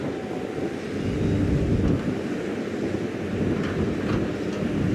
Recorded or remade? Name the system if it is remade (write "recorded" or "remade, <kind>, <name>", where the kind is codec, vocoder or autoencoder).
recorded